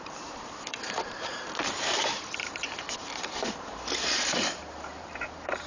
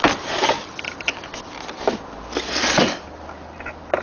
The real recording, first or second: second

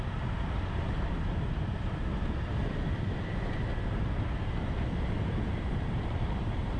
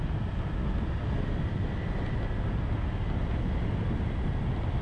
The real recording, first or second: second